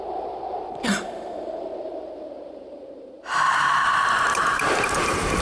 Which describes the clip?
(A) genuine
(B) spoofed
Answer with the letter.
B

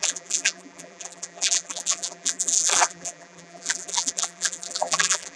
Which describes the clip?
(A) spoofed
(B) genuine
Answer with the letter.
A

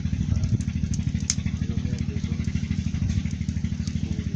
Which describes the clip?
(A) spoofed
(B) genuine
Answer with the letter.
B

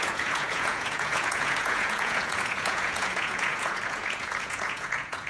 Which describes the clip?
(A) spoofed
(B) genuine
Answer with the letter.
A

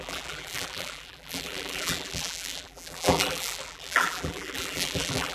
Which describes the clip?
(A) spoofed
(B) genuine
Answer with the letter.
A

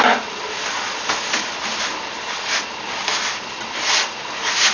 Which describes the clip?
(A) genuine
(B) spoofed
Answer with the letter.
A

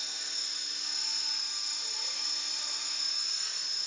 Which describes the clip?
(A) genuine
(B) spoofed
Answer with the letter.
A